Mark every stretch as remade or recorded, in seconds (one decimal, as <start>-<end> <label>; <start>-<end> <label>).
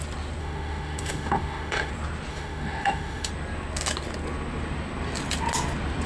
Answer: 0.0-0.4 recorded; 0.4-1.9 remade; 1.9-2.3 recorded; 2.3-3.3 remade; 3.3-6.1 recorded